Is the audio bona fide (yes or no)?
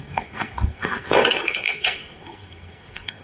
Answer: no